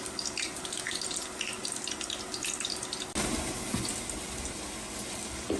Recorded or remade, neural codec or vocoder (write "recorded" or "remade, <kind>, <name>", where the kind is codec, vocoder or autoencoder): recorded